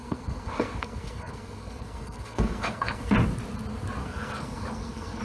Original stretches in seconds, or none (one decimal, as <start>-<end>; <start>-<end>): 3.1-4.0